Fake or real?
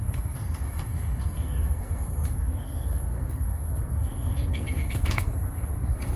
fake